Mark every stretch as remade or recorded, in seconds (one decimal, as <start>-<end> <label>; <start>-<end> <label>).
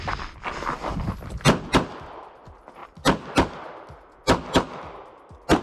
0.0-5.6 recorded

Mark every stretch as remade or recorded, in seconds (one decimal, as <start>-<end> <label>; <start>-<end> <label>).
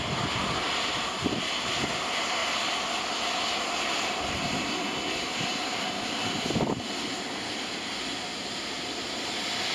0.0-9.7 recorded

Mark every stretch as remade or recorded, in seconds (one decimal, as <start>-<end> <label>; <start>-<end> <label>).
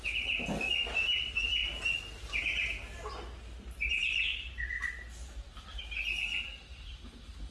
0.0-7.5 recorded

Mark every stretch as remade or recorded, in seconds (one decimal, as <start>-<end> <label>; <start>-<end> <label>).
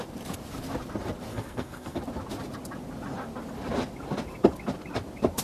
0.0-1.3 recorded; 1.3-2.0 remade; 2.0-5.4 recorded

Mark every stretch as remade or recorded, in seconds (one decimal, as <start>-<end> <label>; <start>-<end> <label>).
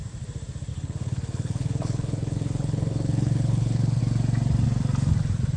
0.0-0.7 recorded; 0.7-4.0 remade; 4.0-5.6 recorded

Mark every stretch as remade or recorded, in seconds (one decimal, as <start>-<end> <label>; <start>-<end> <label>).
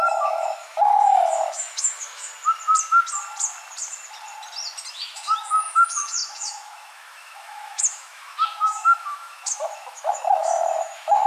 0.0-2.3 remade; 2.3-4.9 recorded; 4.9-11.3 remade